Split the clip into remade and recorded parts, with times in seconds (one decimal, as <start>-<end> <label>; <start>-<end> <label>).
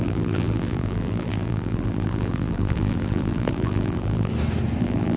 0.0-4.3 remade; 4.3-4.8 recorded; 4.8-5.2 remade